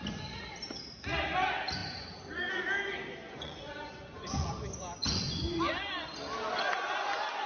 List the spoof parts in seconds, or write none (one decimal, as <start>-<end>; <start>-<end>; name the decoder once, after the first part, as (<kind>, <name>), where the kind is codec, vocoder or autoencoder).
1.8-2.5 (vocoder, Vocos); 3.2-4.5; 5.0-5.6